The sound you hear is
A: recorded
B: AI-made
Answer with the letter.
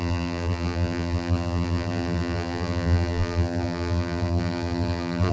B